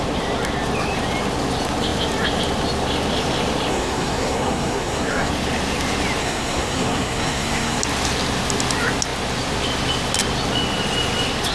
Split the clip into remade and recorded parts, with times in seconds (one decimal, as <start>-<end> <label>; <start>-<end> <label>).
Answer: 0.0-3.7 recorded; 3.7-5.3 remade; 5.3-6.2 recorded; 6.2-7.8 remade; 7.8-11.5 recorded